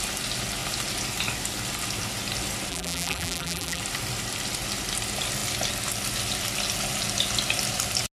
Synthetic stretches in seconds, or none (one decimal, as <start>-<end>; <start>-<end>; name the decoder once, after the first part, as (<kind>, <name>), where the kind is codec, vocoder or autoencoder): 2.7-3.8 (vocoder, BigVGAN v2)